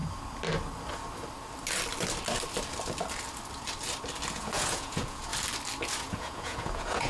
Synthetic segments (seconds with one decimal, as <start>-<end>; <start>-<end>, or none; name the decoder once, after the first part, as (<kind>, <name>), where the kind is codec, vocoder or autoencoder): 4.3-5.3 (vocoder, Vocos); 6.0-7.1